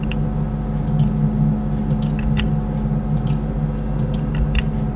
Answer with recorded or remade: recorded